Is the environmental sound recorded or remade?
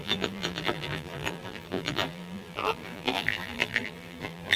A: remade